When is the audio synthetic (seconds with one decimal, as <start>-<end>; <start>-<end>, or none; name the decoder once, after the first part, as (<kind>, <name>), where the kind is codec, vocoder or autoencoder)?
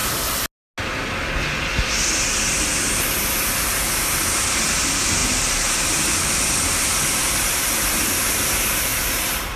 none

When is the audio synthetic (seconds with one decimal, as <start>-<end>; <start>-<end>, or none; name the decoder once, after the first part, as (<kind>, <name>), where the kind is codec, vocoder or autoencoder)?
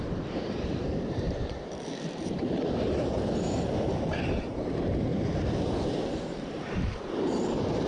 0.0-5.1 (vocoder, BigVGAN v2); 5.9-7.9